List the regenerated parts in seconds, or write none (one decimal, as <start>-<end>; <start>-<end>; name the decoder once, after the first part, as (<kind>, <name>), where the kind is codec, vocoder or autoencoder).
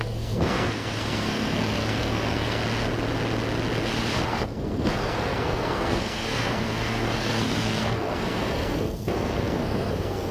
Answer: 0.0-2.6 (codec, SNAC); 4.3-10.3